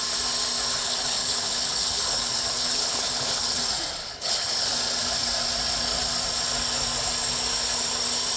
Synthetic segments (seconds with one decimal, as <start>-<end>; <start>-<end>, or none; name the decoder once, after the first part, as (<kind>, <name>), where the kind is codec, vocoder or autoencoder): 0.8-3.6 (codec, HILCodec); 4.0-4.7